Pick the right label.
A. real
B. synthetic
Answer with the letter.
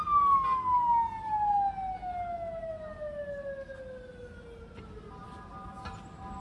A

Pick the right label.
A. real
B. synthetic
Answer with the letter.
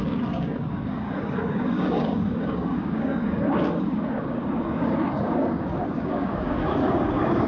B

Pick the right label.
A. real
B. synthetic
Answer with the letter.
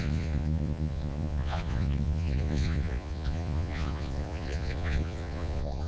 B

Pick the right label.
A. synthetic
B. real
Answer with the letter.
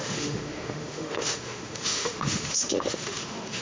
A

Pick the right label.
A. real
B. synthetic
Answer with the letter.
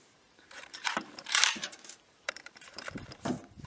B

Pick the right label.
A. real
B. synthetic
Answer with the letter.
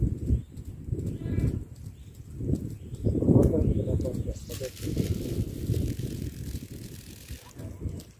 A